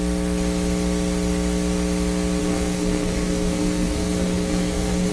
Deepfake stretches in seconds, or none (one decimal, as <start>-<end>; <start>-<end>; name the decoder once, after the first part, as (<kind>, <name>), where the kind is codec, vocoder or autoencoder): 2.4-5.1 (codec, SNAC)